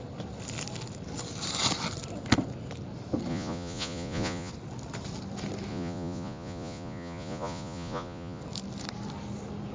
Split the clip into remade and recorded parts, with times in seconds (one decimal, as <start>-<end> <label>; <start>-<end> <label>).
0.0-3.3 recorded; 3.3-4.5 remade; 4.5-5.7 recorded; 5.7-8.4 remade; 8.4-9.7 recorded